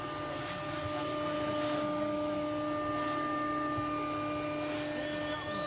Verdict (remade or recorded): recorded